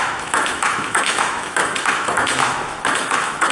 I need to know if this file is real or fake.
fake